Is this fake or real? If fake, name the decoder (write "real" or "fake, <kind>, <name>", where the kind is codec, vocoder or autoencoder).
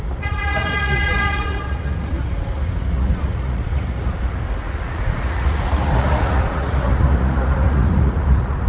fake, vocoder, Vocos